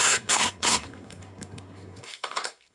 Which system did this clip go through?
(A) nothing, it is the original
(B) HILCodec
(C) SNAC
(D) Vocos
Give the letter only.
C